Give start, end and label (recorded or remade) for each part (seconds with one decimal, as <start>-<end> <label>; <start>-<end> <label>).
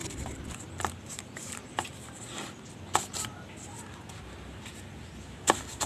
0.0-1.6 remade; 1.6-5.1 recorded; 5.1-5.9 remade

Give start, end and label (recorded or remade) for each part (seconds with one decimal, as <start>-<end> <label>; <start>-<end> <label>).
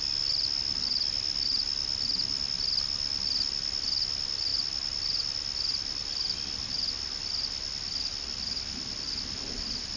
0.0-10.0 recorded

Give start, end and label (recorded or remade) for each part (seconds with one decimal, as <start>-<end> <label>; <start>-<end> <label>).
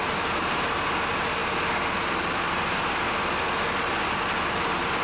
0.0-0.7 remade; 0.7-5.0 recorded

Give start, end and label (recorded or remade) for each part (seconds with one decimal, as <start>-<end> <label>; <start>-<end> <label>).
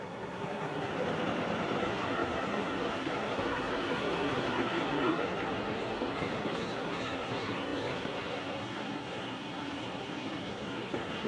0.0-0.9 remade; 0.9-1.8 recorded; 1.8-11.3 remade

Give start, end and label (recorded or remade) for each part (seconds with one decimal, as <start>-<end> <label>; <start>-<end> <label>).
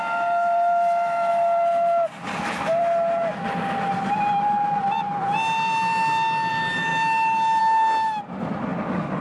0.0-9.2 recorded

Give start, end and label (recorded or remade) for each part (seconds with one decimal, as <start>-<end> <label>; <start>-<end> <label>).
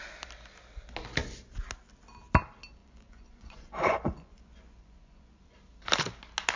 0.0-2.8 recorded; 2.8-5.4 remade; 5.4-6.6 recorded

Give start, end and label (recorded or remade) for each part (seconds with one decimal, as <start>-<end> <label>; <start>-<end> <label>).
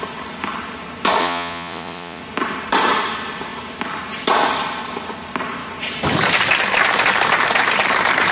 0.0-1.2 recorded; 1.2-2.2 remade; 2.2-8.3 recorded